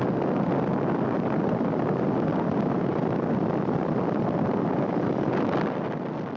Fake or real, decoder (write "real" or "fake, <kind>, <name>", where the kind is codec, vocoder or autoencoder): real